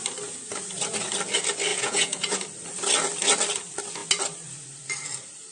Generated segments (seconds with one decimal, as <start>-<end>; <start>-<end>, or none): 1.7-2.3